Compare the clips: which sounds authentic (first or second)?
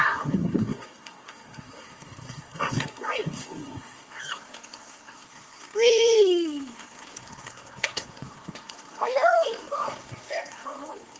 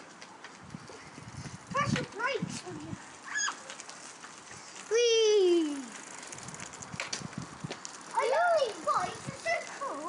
second